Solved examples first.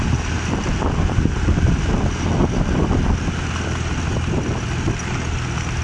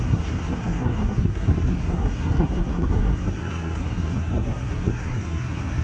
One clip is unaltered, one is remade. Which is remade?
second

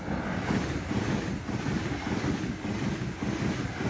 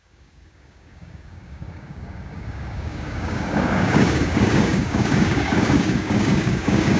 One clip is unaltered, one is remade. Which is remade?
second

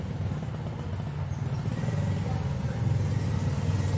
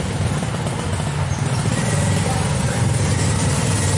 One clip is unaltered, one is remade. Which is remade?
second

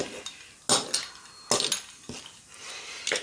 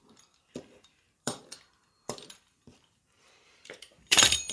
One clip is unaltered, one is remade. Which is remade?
second